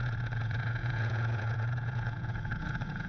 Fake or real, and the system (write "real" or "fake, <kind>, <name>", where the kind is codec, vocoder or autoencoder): fake, vocoder, Vocos